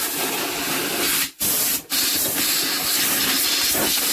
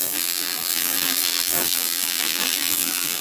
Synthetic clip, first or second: second